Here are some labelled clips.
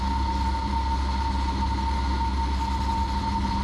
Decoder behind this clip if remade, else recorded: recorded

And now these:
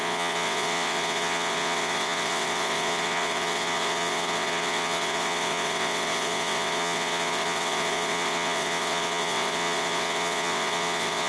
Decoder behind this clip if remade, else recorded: remade, vocoder, WaveNeXt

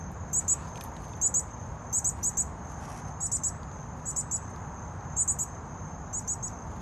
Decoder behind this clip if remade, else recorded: recorded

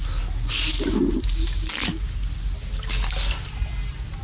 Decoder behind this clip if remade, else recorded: recorded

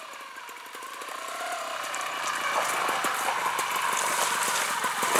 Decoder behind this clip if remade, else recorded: recorded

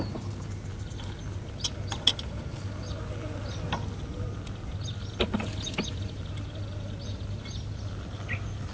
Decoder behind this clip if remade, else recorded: recorded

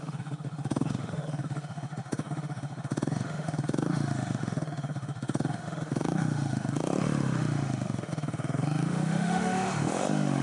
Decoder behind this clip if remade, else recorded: remade, autoencoder, DAC-VAE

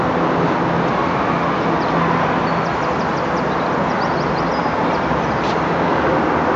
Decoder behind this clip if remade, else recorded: recorded